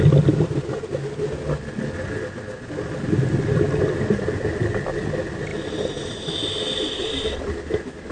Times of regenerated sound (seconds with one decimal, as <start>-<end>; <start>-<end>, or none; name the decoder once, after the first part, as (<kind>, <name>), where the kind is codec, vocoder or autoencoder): 5.5-6.3 (vocoder, BigVGAN v2)